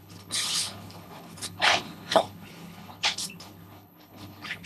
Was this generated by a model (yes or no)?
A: yes